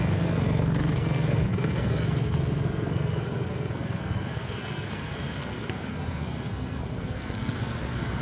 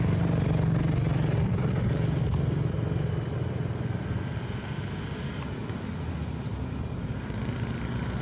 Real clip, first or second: second